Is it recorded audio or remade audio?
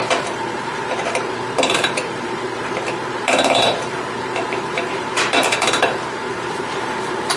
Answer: remade